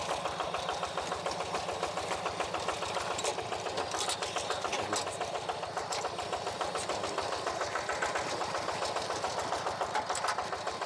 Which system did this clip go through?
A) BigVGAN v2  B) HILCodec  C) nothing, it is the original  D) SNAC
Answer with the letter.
C